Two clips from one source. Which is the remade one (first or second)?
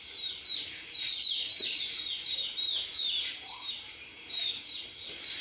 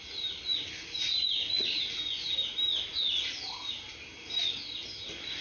first